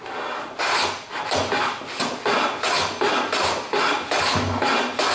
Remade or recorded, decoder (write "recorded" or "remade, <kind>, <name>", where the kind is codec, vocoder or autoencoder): recorded